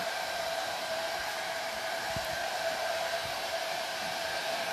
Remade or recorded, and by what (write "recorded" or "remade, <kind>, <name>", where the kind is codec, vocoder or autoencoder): remade, vocoder, BigVGAN v2